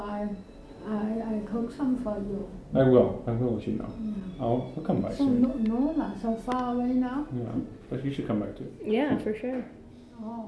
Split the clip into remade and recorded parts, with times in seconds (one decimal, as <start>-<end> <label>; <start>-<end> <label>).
0.0-10.5 recorded